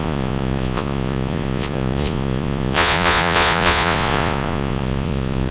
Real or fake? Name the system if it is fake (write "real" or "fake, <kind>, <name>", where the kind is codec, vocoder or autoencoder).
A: fake, vocoder, Vocos